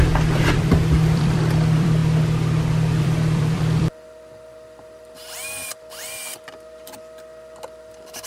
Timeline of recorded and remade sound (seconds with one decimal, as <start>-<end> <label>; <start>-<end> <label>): 0.0-2.0 remade; 2.0-2.7 recorded; 2.7-8.3 remade